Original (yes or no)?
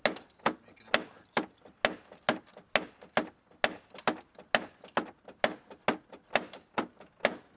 yes